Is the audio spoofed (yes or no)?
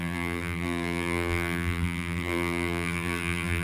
yes